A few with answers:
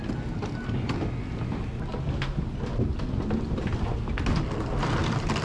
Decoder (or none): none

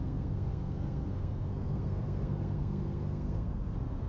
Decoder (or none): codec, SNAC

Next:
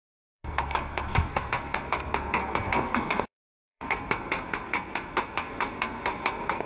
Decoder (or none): codec, SNAC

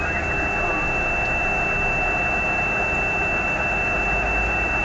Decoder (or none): none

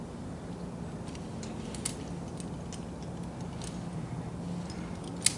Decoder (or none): none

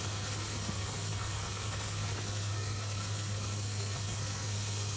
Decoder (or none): codec, SNAC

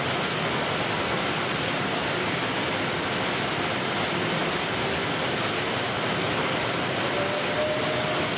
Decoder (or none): none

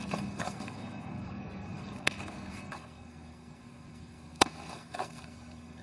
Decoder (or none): codec, SNAC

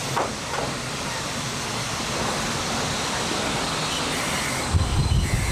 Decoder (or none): none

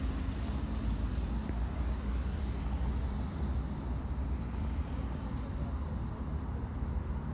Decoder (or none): none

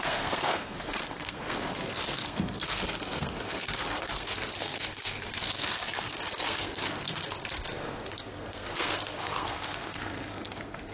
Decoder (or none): codec, SNAC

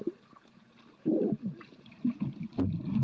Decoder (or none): none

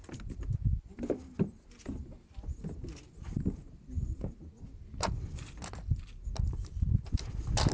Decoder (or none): none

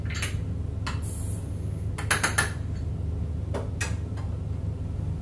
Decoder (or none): none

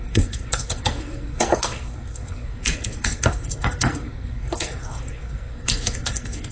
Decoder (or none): codec, SNAC